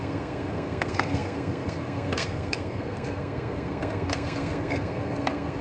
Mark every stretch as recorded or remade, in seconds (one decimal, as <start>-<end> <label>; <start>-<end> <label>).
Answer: 0.0-5.6 remade